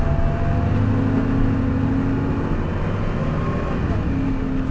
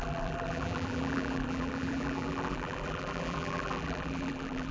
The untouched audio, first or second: first